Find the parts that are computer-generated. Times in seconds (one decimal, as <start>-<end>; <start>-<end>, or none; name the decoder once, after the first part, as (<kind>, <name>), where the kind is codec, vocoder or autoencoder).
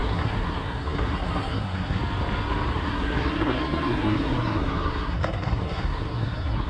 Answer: 0.0-2.0 (codec, SNAC); 2.7-6.7